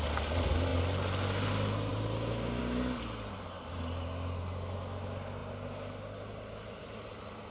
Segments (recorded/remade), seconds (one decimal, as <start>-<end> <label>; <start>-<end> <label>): 0.0-7.5 recorded